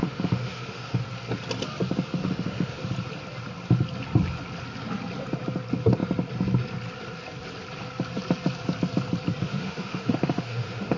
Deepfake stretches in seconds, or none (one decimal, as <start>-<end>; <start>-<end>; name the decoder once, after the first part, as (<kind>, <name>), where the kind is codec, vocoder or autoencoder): 0.0-1.0 (autoencoder, DAC-VAE); 2.2-2.8; 9.4-11.0